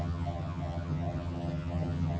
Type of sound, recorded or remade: remade